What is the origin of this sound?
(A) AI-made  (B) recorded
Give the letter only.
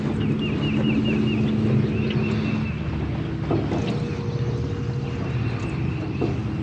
B